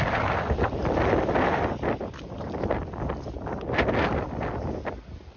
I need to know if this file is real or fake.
real